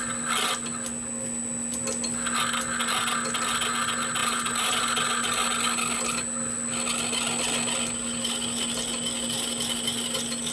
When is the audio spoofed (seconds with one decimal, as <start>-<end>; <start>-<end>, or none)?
4.2-4.8